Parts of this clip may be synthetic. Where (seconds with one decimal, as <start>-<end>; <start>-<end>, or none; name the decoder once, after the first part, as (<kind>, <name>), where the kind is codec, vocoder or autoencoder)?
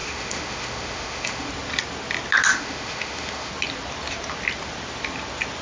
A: 0.0-1.5 (autoencoder, DAC-VAE); 2.5-3.5